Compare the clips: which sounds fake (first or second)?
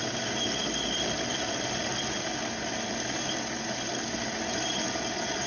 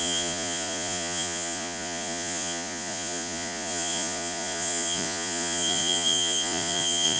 second